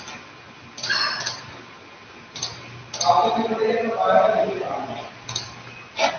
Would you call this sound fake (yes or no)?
no